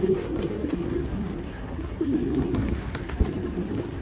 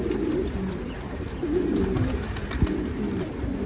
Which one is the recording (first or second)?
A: second